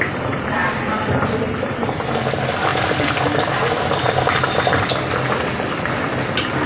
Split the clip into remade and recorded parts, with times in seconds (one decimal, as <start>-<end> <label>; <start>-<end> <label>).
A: 0.0-6.7 remade